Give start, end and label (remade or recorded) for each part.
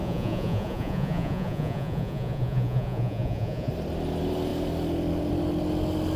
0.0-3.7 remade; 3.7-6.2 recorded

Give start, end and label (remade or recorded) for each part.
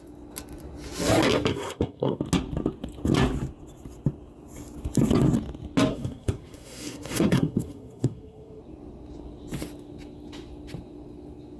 0.0-1.5 recorded; 1.5-2.2 remade; 2.2-5.9 recorded; 5.9-8.6 remade; 8.6-11.6 recorded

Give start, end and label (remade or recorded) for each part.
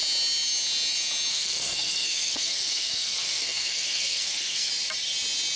0.0-1.3 recorded; 1.3-4.7 remade; 4.7-5.6 recorded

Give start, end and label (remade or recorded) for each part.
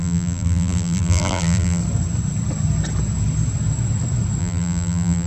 0.0-1.8 remade; 1.8-4.4 recorded; 4.4-5.3 remade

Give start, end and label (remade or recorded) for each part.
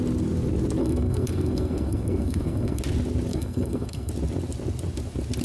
0.0-0.8 recorded; 0.8-2.8 remade; 2.8-3.3 recorded; 3.3-4.1 remade; 4.1-5.4 recorded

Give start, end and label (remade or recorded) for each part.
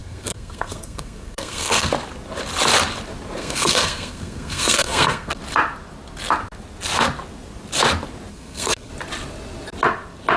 0.0-1.9 remade; 1.9-3.4 recorded; 3.4-5.4 remade; 5.4-8.3 recorded; 8.3-8.9 remade; 8.9-10.4 recorded